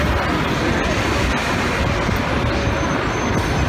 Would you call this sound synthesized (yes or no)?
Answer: no